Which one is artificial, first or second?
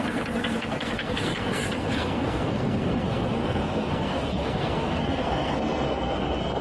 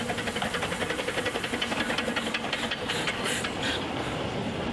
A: first